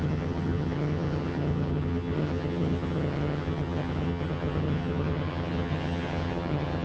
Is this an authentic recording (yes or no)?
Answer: no